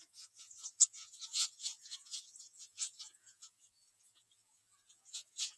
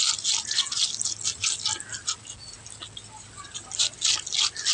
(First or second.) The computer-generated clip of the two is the first